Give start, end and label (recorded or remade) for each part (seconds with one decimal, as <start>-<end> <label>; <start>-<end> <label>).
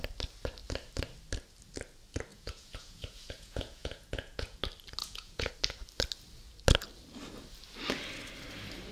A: 0.0-2.3 recorded; 2.3-4.6 remade; 4.6-5.0 recorded; 5.0-5.5 remade; 5.5-8.9 recorded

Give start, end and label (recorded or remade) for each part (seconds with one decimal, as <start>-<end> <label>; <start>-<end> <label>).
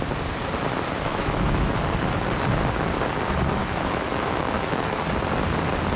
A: 0.0-1.1 recorded; 1.1-1.7 remade; 1.7-3.6 recorded; 3.6-5.0 remade; 5.0-6.0 recorded